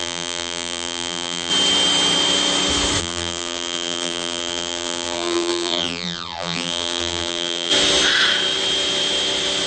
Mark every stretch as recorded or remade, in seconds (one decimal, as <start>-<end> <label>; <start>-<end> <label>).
0.0-1.5 remade; 1.5-3.0 recorded; 3.0-7.7 remade; 7.7-9.7 recorded